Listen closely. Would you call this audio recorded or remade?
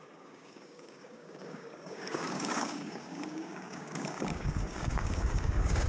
remade